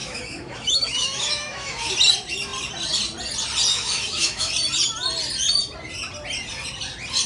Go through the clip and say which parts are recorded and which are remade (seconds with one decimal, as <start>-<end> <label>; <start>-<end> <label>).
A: 0.0-1.9 remade; 1.9-3.7 recorded; 3.7-4.5 remade; 4.5-7.3 recorded